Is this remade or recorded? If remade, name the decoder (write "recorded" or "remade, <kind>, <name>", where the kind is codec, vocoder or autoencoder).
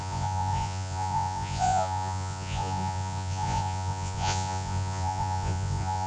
remade, vocoder, Vocos